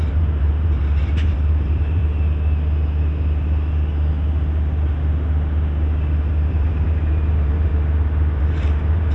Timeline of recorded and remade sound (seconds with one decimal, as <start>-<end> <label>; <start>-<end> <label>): 0.0-2.0 remade; 2.0-6.5 recorded; 6.5-7.7 remade; 7.7-8.4 recorded; 8.4-9.1 remade